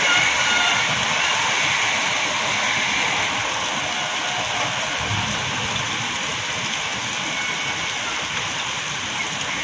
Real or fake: real